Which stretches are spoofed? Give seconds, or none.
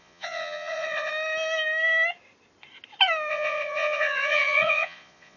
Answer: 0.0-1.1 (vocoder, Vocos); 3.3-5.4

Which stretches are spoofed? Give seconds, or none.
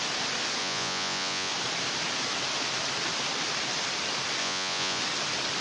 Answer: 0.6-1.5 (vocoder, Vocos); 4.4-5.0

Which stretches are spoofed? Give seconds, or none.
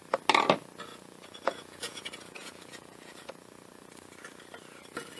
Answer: 0.9-3.3 (vocoder, Vocos)